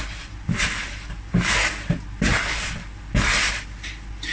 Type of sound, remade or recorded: recorded